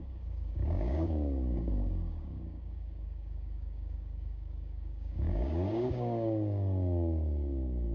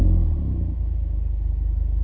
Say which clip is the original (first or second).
second